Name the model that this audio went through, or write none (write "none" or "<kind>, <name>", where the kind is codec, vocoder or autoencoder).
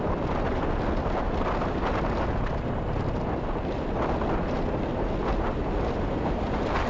none